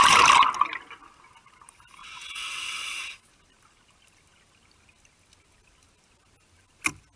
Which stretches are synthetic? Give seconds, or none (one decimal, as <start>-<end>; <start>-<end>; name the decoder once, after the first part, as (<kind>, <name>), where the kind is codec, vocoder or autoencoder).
2.0-3.3 (vocoder, WaveNeXt)